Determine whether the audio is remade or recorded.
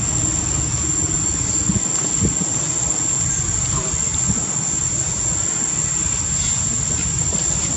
recorded